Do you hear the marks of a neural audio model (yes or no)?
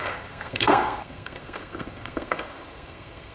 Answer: yes